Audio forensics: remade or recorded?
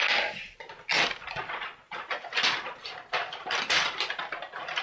recorded